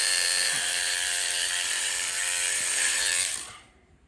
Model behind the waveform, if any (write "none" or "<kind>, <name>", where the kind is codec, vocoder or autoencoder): vocoder, BigVGAN v2